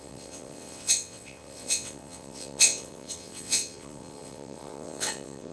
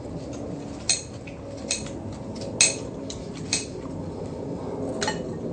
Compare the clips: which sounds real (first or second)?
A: second